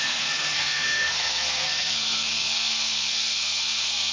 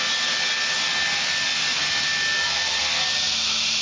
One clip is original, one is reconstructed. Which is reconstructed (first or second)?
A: first